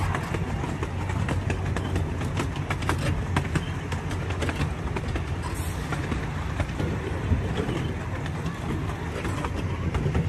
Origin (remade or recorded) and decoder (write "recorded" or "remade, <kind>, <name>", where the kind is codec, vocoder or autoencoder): recorded